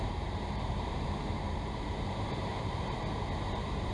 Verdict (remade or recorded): remade